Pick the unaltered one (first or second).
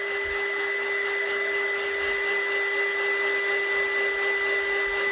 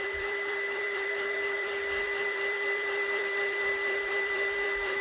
first